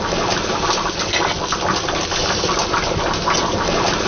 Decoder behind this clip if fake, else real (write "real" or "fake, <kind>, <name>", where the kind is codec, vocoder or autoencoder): real